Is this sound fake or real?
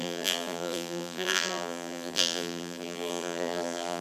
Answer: fake